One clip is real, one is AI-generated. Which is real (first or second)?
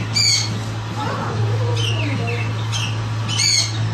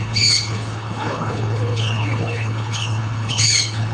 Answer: first